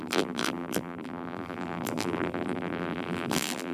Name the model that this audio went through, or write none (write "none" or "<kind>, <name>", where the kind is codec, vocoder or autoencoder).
vocoder, BigVGAN v2